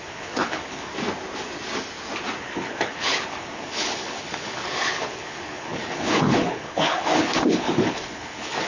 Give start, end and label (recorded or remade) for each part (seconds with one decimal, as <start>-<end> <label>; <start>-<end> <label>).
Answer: 0.0-0.9 remade; 0.9-2.4 recorded; 2.4-8.7 remade